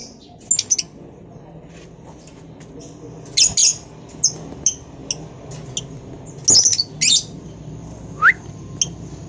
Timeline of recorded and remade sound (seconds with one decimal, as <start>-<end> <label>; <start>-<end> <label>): 0.0-9.3 recorded